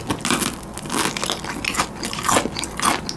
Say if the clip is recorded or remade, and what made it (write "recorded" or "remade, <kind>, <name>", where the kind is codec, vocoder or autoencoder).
recorded